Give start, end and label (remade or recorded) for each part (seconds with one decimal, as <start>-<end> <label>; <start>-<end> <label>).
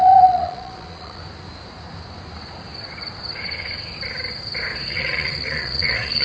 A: 0.0-1.2 remade; 1.2-4.9 recorded; 4.9-6.2 remade